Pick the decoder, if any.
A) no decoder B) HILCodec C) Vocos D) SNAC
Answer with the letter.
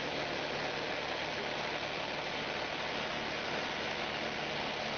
A